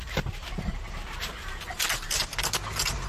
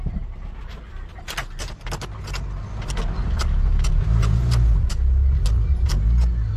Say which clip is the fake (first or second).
first